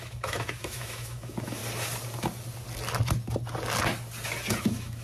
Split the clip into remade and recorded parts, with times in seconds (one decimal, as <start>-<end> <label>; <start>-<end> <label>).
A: 0.0-1.6 remade; 1.6-4.6 recorded; 4.6-5.0 remade